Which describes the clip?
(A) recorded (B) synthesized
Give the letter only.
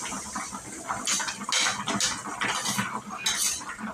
A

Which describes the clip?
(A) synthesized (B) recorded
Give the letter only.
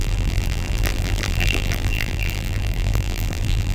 A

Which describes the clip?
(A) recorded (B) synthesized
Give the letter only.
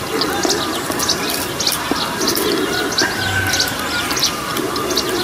A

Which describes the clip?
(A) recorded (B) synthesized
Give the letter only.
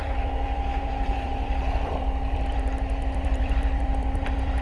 B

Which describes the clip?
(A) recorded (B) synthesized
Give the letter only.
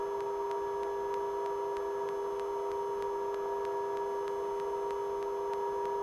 A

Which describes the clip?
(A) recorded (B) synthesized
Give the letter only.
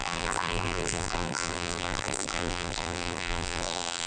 B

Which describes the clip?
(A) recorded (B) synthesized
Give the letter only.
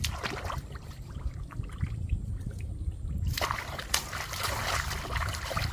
B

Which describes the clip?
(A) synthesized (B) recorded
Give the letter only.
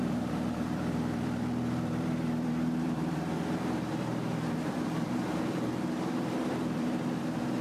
A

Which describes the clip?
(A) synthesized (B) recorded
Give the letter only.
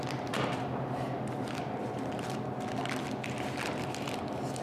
B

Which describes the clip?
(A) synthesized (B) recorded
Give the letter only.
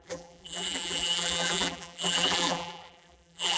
A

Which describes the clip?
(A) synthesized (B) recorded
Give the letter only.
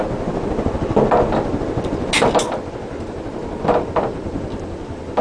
B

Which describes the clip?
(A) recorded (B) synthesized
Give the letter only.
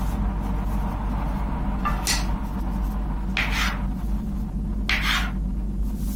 A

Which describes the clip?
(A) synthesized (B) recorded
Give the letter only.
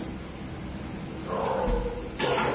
B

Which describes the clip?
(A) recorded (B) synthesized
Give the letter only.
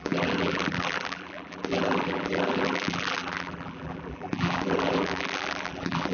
B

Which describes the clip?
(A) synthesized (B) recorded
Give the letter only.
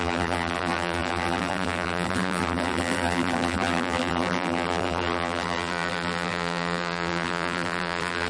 A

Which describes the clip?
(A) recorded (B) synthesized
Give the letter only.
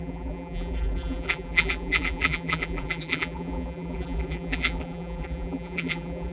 B